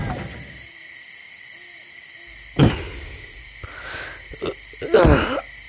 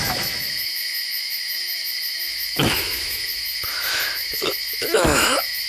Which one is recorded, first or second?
first